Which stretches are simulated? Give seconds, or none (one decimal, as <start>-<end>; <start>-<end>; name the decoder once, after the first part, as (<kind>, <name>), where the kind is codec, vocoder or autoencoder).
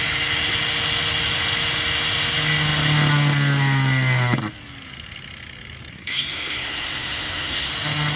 5.9-7.7 (codec, SNAC)